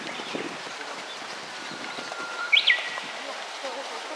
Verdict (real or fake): real